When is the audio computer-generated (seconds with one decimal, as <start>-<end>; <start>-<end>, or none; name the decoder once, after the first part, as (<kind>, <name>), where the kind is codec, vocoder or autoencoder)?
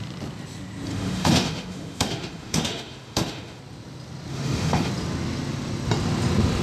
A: 0.9-3.6 (autoencoder, DAC-VAE); 4.3-4.9